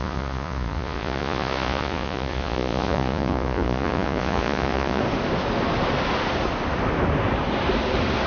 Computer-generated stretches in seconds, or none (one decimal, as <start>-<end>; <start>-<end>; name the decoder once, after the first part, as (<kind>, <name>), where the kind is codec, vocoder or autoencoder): 0.0-5.0 (vocoder, Vocos)